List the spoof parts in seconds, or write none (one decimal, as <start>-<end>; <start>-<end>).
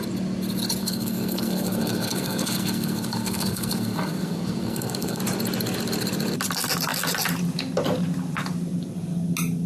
0.8-5.2